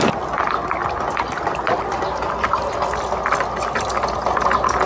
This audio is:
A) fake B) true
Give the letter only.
B